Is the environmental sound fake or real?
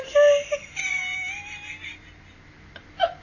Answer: real